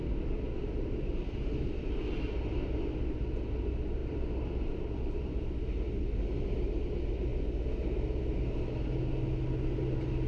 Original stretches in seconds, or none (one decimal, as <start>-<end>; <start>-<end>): 0.0-0.6; 1.4-4.0; 4.8-10.3